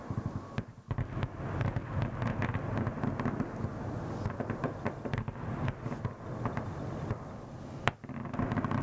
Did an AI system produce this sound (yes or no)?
no